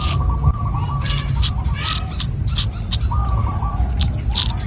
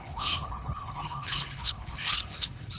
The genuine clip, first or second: first